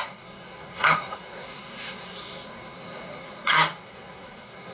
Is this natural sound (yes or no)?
no